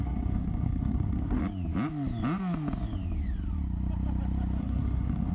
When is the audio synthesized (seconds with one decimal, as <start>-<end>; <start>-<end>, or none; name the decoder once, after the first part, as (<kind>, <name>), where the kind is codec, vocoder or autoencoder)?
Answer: 0.0-1.4 (codec, SNAC); 4.6-5.3